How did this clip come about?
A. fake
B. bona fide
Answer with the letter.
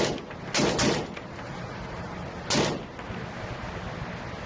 B